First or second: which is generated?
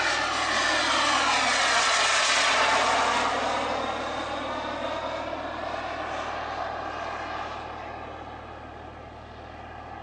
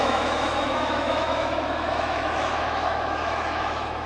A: second